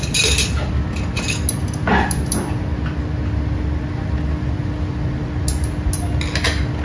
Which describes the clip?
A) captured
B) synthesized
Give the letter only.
A